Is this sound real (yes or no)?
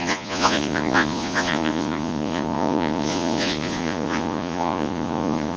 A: no